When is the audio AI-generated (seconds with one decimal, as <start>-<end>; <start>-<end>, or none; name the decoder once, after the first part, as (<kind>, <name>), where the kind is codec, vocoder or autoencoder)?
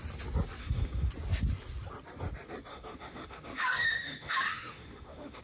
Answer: 0.6-1.1 (autoencoder, DAC-VAE); 2.7-5.4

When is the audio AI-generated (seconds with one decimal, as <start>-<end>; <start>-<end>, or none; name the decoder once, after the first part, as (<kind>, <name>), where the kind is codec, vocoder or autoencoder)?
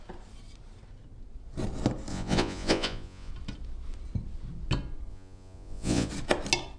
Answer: 2.1-3.3 (vocoder, Vocos); 5.1-6.1